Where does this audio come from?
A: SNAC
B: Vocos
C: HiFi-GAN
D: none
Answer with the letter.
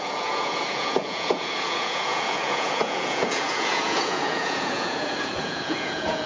B